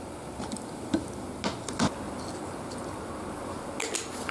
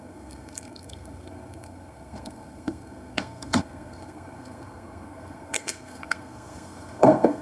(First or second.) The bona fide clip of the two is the first